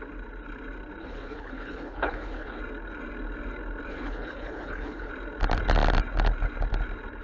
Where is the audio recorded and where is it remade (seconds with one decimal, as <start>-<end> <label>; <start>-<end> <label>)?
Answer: 0.0-1.0 recorded; 1.0-2.6 remade; 2.6-3.9 recorded; 3.9-5.1 remade; 5.1-7.2 recorded